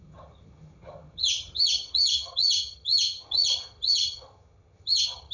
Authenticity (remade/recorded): remade